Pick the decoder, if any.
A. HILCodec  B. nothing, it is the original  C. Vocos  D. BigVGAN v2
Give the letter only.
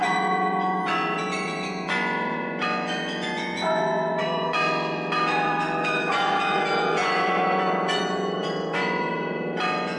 C